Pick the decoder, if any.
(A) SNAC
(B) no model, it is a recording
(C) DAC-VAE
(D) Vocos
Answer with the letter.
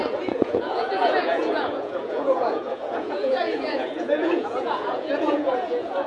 D